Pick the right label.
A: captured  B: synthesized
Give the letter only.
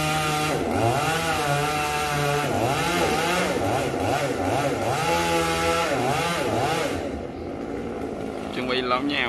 A